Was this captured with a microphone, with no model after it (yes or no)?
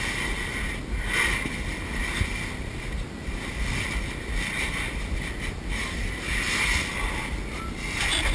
yes